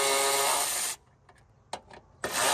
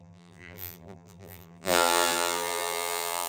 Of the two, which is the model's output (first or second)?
second